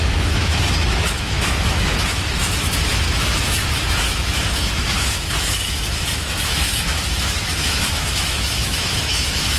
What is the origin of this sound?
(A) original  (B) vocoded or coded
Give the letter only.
B